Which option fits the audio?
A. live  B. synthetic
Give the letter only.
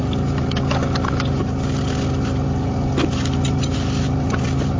A